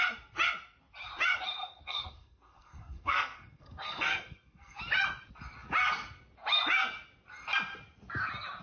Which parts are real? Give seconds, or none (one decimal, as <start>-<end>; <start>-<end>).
0.0-1.6; 4.8-8.6